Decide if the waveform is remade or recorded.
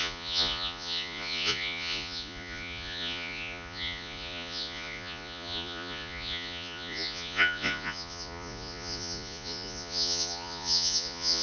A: remade